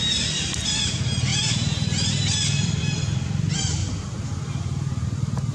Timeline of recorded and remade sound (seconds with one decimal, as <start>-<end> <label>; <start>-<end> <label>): 0.0-5.5 recorded